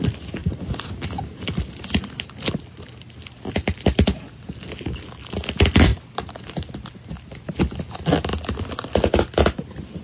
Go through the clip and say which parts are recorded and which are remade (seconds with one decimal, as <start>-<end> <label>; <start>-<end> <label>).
0.0-0.4 recorded; 0.4-1.8 remade; 1.8-5.9 recorded; 5.9-7.6 remade; 7.6-10.0 recorded